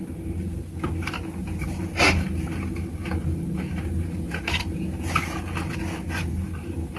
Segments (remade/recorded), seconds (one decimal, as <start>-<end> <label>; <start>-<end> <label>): 0.0-7.0 recorded